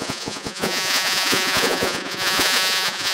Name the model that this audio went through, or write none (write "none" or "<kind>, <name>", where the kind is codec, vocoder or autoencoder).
vocoder, Vocos